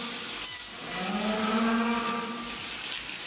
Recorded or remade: recorded